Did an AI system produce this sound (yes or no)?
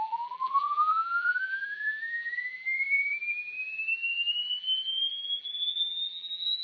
yes